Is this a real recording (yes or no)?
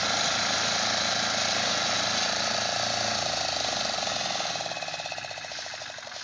no